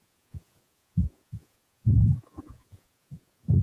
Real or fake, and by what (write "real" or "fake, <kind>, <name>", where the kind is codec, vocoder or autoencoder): fake, vocoder, Vocos